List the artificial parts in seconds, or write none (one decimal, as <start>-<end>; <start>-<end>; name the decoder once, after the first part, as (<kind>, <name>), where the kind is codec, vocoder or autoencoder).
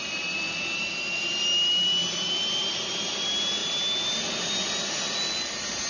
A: none